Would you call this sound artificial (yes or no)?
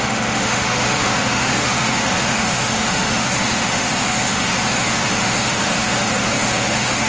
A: yes